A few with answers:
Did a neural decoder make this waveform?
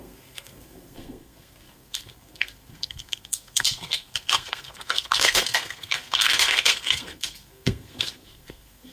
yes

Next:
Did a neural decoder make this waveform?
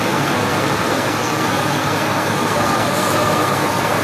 yes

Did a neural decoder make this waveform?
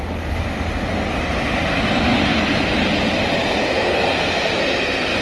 no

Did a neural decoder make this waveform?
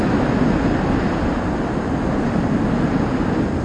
no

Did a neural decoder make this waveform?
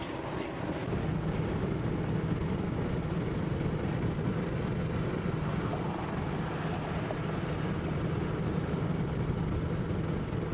no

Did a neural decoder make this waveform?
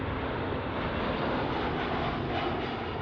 no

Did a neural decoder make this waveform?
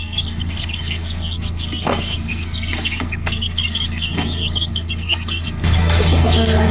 yes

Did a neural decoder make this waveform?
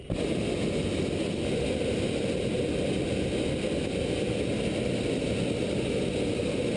no